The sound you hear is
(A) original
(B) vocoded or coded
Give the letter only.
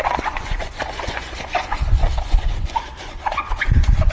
B